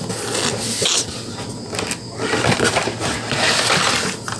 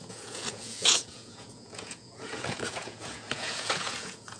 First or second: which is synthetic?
second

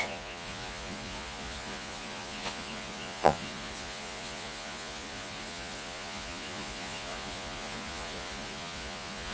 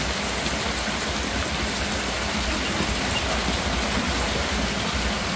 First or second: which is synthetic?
first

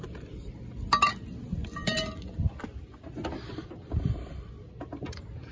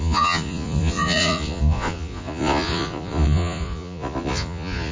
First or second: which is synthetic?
second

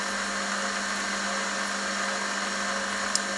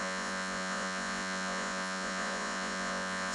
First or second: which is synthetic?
second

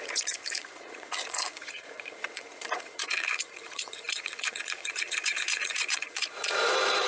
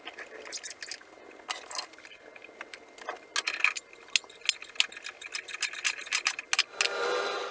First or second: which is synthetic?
first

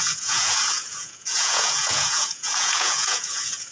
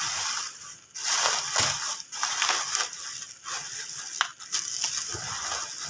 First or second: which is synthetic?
first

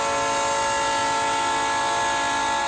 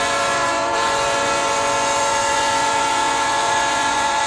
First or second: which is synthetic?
second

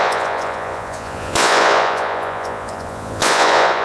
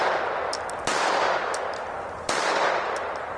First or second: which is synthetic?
first